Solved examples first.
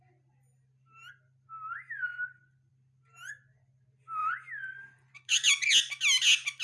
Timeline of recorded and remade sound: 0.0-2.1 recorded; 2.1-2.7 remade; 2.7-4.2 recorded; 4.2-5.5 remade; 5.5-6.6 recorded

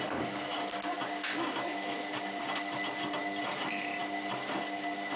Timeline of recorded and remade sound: 0.0-5.2 recorded

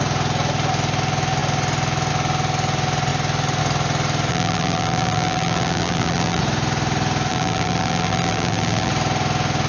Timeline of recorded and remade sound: 0.0-4.3 recorded; 4.3-6.4 remade; 6.4-7.3 recorded; 7.3-8.9 remade; 8.9-9.7 recorded

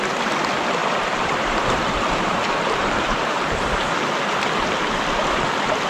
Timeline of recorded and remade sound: 0.0-0.8 recorded; 0.8-4.0 remade; 4.0-5.9 recorded

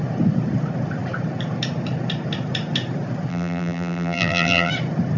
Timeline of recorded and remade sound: 0.0-3.3 recorded; 3.3-4.7 remade; 4.7-5.2 recorded

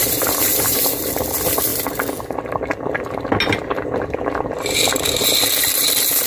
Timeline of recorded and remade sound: 0.0-1.0 remade; 1.0-6.3 recorded